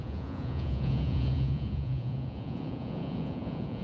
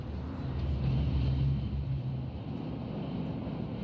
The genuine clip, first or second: second